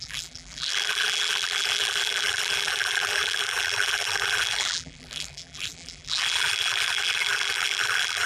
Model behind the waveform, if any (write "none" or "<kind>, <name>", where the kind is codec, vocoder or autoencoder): vocoder, BigVGAN v2